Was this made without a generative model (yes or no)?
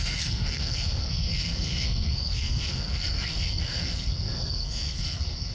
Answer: no